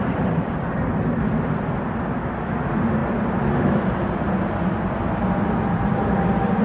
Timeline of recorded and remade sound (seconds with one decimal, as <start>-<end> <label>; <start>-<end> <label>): 0.0-6.6 recorded